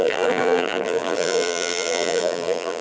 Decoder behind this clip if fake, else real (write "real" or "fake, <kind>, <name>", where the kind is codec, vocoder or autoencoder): fake, vocoder, BigVGAN v2